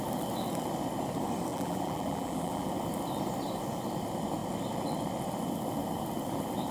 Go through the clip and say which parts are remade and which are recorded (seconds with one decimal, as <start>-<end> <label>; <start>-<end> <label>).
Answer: 0.0-1.5 recorded; 1.5-2.7 remade; 2.7-6.7 recorded

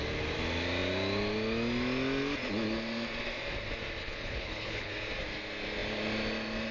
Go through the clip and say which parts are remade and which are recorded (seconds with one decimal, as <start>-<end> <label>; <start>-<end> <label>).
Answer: 0.0-4.0 recorded; 4.0-4.9 remade; 4.9-6.7 recorded

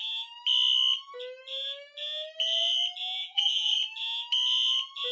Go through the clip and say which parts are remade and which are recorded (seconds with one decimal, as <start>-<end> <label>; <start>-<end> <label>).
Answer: 0.0-3.2 recorded; 3.2-3.8 remade; 3.8-5.1 recorded